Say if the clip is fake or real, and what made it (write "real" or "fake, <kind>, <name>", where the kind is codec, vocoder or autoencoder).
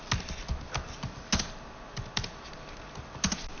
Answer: real